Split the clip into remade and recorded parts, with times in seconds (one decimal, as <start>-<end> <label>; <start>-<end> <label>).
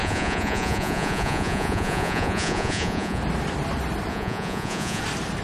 0.0-3.2 remade; 3.2-4.1 recorded; 4.1-5.0 remade; 5.0-5.4 recorded